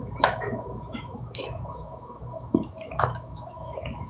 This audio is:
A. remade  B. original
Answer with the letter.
A